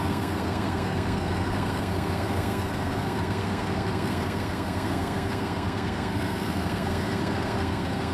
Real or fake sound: fake